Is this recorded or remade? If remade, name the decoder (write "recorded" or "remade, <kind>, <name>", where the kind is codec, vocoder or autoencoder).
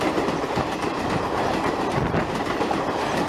recorded